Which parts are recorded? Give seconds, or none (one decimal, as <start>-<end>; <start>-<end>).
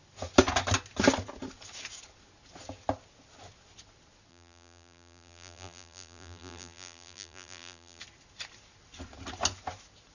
0.0-4.3; 8.0-10.1